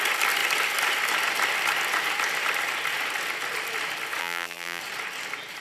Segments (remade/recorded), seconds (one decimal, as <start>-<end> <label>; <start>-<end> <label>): 0.0-4.2 recorded; 4.2-4.8 remade; 4.8-5.6 recorded